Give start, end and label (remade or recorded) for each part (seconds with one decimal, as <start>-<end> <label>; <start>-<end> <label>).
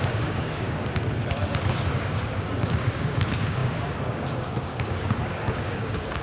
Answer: 0.0-1.4 remade; 1.4-2.0 recorded; 2.0-6.2 remade